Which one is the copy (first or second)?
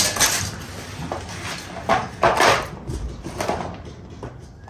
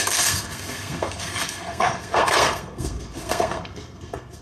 second